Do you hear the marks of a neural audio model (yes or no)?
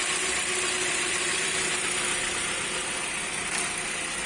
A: no